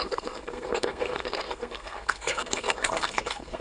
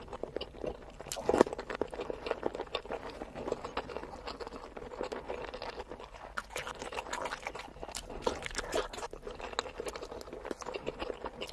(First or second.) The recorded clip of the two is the second